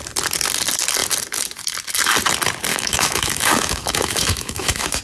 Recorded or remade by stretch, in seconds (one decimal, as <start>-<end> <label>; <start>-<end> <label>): 0.0-2.7 recorded; 2.7-5.0 remade